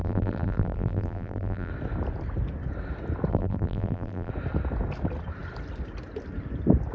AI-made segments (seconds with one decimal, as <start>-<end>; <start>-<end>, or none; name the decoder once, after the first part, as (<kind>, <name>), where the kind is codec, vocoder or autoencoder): 0.0-1.7 (vocoder, BigVGAN v2); 3.3-4.3